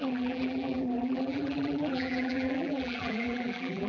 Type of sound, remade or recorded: remade